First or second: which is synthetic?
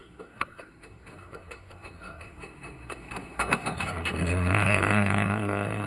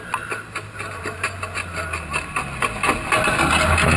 first